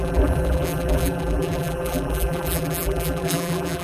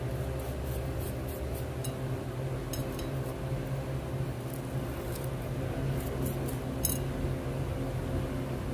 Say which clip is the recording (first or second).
second